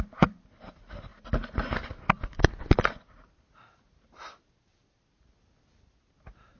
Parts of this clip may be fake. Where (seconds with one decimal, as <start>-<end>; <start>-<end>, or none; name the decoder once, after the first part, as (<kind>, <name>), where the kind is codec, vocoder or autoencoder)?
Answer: none